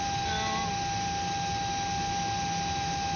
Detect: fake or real real